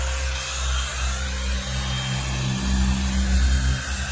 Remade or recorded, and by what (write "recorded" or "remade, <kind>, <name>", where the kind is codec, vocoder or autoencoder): recorded